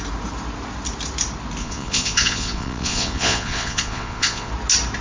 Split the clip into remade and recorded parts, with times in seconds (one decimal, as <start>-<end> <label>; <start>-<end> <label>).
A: 0.0-1.6 recorded; 1.6-4.5 remade; 4.5-5.0 recorded